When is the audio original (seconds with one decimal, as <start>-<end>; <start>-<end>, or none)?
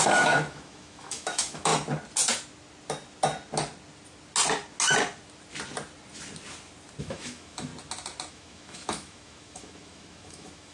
1.7-7.0; 7.7-8.3